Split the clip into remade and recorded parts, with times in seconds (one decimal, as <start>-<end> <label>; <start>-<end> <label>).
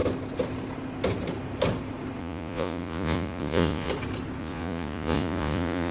0.0-2.2 recorded; 2.2-3.9 remade; 3.9-4.4 recorded; 4.4-5.9 remade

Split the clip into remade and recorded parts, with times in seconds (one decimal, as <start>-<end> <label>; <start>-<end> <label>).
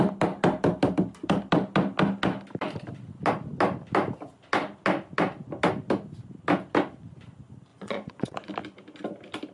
0.0-7.7 recorded; 7.7-8.5 remade; 8.5-9.5 recorded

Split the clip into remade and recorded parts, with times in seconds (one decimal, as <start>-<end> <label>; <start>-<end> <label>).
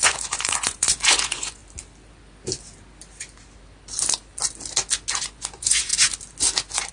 0.0-1.6 remade; 1.6-5.2 recorded; 5.2-5.9 remade; 5.9-6.9 recorded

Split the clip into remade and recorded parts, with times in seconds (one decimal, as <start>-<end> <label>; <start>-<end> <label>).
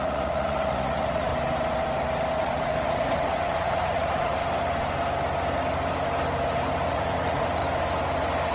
0.0-1.3 remade; 1.3-2.4 recorded; 2.4-4.4 remade; 4.4-6.9 recorded; 6.9-7.6 remade; 7.6-8.5 recorded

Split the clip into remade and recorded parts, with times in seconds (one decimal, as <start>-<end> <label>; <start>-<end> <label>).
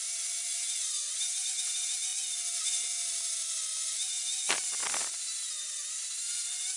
0.0-6.8 recorded